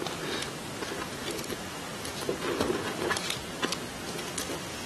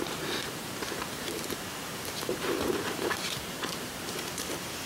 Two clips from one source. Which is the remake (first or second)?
second